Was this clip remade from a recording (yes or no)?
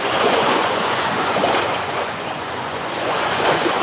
yes